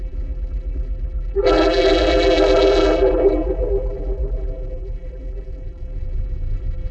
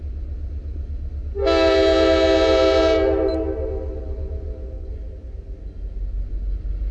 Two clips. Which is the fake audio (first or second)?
first